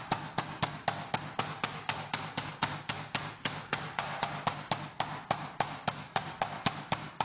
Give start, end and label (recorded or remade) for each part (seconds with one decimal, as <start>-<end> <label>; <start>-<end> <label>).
0.0-7.2 recorded